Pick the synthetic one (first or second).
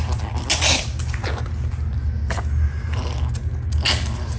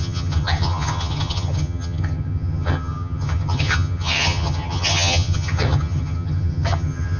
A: second